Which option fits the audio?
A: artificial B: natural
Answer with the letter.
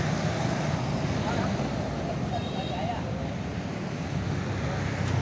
B